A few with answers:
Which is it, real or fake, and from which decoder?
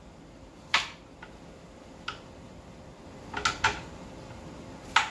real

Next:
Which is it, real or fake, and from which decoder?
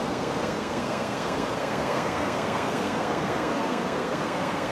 fake, codec, SNAC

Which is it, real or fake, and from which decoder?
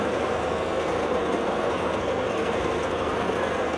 fake, codec, SNAC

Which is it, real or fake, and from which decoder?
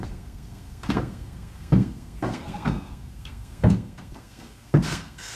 fake, codec, SNAC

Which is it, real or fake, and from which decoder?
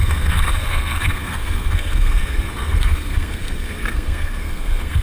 fake, codec, SNAC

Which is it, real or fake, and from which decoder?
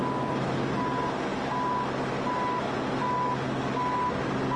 real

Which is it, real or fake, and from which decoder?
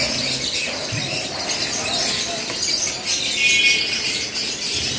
real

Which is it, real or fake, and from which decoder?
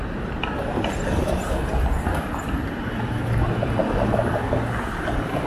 real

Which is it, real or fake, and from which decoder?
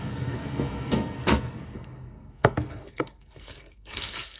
fake, codec, SNAC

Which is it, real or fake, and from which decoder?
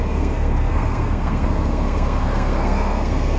fake, codec, SNAC